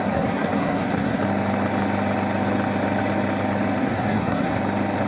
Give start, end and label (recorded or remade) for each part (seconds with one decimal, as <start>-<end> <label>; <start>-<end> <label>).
0.0-1.2 remade; 1.2-3.8 recorded; 3.8-4.6 remade; 4.6-5.1 recorded